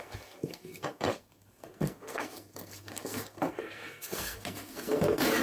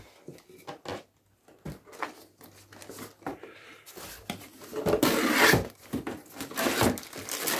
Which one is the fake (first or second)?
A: first